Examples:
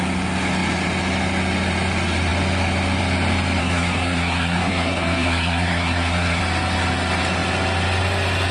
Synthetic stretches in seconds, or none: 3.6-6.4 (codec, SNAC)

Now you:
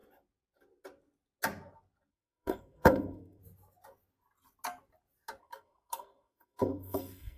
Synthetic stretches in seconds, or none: 2.1-3.4 (codec, SNAC); 5.4-7.4

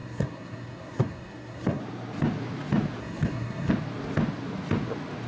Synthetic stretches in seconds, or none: 0.0-1.8 (codec, SNAC); 3.0-3.7

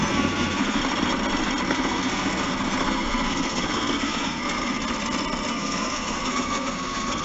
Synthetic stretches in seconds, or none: 0.0-0.8 (codec, SNAC); 1.7-4.8; 5.5-7.2

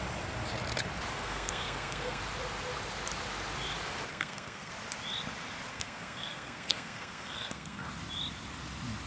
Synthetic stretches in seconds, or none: 1.1-2.2 (codec, SNAC); 4.1-4.7; 5.7-7.9